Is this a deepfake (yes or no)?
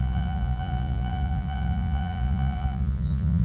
yes